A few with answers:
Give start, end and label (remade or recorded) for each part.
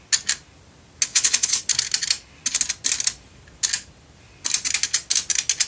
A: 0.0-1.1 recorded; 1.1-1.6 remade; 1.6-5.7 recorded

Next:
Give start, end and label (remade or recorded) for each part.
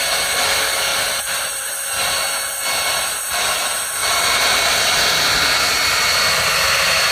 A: 0.0-0.9 recorded; 0.9-1.7 remade; 1.7-4.0 recorded; 4.0-4.6 remade; 4.6-7.1 recorded